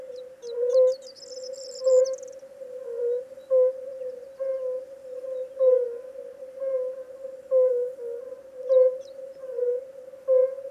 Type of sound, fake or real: real